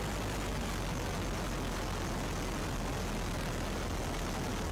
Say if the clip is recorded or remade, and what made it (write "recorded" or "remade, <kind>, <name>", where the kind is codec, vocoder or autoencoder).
recorded